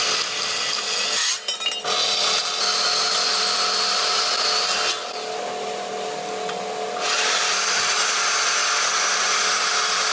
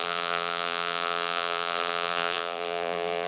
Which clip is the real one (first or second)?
first